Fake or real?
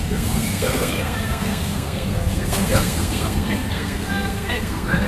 fake